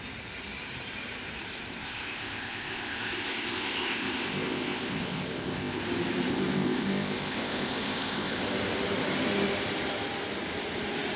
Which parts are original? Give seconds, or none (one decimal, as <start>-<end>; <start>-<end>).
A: 0.0-1.8; 5.8-6.3; 8.4-11.2